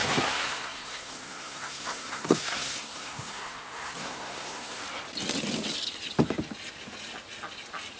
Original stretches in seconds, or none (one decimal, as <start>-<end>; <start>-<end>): 4.8-8.0